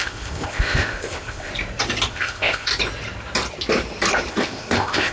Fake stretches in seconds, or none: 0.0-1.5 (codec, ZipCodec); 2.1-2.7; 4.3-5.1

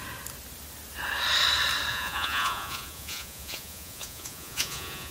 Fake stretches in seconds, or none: 1.9-5.1 (vocoder, Vocos)